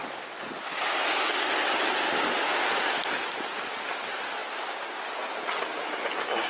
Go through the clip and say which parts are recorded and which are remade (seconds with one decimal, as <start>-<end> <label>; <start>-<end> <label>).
0.0-6.5 recorded